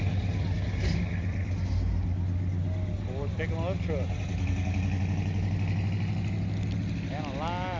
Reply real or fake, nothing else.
real